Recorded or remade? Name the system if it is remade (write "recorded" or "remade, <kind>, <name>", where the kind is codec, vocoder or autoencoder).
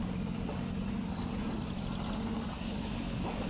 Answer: remade, vocoder, BigVGAN v2